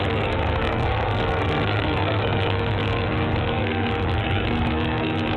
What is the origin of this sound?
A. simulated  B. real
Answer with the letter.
A